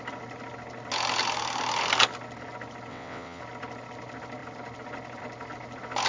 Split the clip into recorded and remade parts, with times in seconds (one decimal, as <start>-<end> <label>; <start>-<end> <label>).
0.0-2.9 recorded; 2.9-3.4 remade; 3.4-6.1 recorded